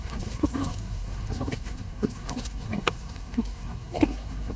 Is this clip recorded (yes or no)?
no